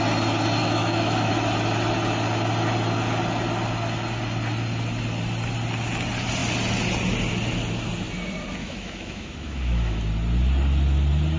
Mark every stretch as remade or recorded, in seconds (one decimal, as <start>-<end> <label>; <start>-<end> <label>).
0.0-0.6 recorded; 0.6-1.3 remade; 1.3-8.6 recorded; 8.6-10.0 remade; 10.0-11.4 recorded